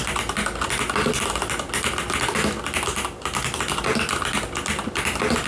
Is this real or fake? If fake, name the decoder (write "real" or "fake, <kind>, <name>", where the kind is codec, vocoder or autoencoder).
real